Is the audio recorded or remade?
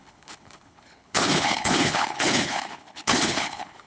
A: remade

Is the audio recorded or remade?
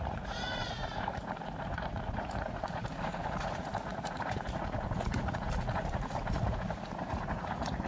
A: remade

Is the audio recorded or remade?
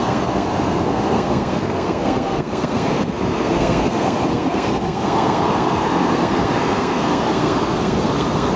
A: remade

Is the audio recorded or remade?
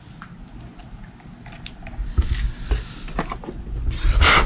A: recorded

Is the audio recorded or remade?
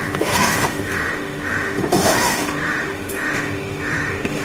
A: remade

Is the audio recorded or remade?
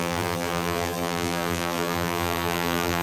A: remade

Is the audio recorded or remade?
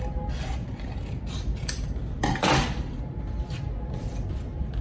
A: recorded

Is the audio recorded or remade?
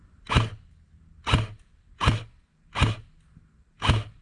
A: recorded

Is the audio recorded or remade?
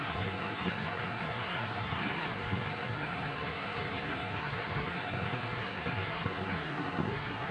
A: remade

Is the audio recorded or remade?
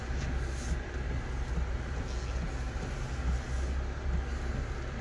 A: recorded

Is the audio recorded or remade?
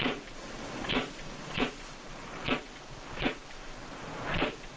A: remade